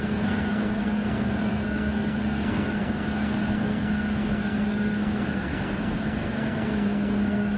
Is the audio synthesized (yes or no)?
yes